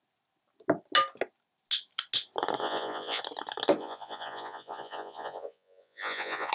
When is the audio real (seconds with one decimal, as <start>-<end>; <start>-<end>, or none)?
0.0-2.6; 3.2-3.8